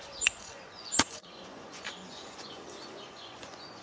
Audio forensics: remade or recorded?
remade